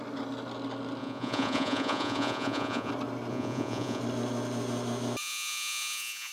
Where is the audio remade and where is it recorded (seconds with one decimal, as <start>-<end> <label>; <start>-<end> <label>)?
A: 0.0-1.0 recorded; 1.0-2.9 remade; 2.9-3.3 recorded; 3.3-4.0 remade; 4.0-5.2 recorded; 5.2-6.3 remade